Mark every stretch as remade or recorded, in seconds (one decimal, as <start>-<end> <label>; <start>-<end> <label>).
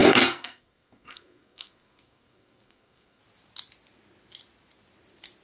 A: 0.0-3.2 remade; 3.2-5.4 recorded